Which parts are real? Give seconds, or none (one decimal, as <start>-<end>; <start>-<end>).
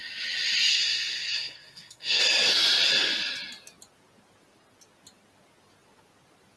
0.0-0.7; 2.2-6.6